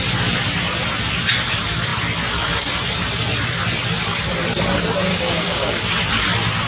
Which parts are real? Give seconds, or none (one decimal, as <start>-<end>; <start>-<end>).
0.0-5.1; 5.8-6.7

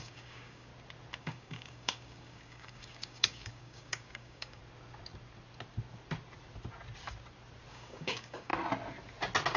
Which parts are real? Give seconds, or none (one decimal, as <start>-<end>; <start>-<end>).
0.7-1.2; 4.6-7.7; 8.5-9.6

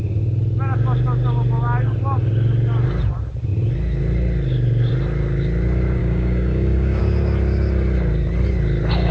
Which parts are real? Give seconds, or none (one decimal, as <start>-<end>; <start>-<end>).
0.0-6.0; 7.0-9.1

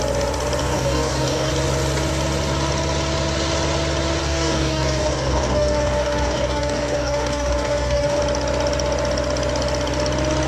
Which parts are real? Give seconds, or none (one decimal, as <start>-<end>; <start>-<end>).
0.0-0.6; 1.5-4.2; 8.2-10.5

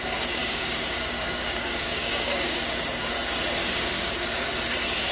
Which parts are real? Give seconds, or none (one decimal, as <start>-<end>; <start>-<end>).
0.0-0.4; 3.1-3.6; 4.5-5.1

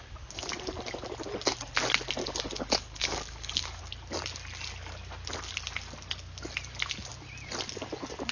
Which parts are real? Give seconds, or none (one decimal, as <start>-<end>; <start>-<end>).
0.0-2.2; 3.8-8.3